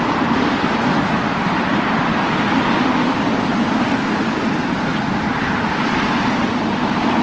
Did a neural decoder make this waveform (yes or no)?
yes